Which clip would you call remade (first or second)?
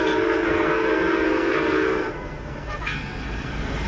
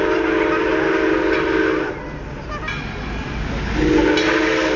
first